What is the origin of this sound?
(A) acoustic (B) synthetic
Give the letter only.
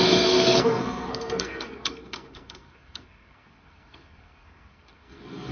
B